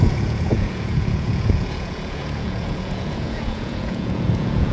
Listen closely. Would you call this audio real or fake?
fake